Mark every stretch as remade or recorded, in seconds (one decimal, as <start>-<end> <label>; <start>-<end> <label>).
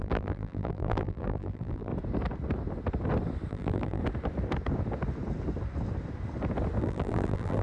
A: 0.0-1.9 remade; 1.9-3.5 recorded; 3.5-4.0 remade; 4.0-6.8 recorded; 6.8-7.6 remade